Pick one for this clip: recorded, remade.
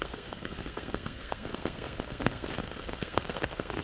remade